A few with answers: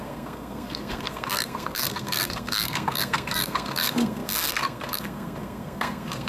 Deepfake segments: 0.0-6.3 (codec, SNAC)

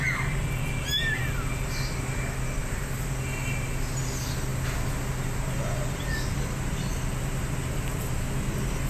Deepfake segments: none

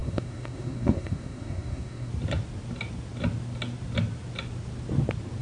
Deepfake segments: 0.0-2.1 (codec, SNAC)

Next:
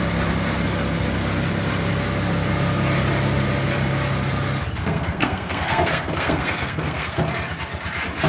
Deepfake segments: 4.8-7.2 (codec, SNAC)

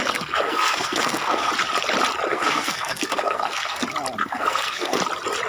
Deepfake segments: 0.0-1.5 (codec, SNAC); 2.3-3.8; 4.2-5.0

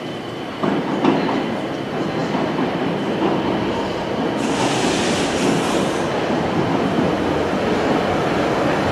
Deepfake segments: none